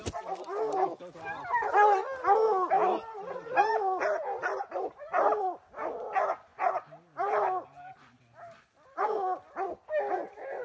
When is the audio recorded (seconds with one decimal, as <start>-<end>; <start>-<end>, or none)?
0.0-2.8; 3.5-6.5; 9.0-10.6